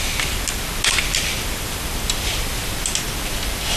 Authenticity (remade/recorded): recorded